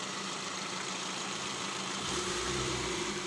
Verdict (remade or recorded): remade